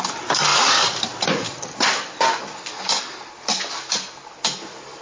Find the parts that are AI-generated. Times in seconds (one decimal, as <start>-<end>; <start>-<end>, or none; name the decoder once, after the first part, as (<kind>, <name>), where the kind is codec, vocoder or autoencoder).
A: none